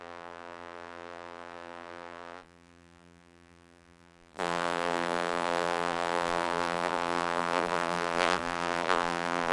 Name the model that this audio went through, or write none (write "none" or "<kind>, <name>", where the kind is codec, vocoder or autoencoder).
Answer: vocoder, BigVGAN v2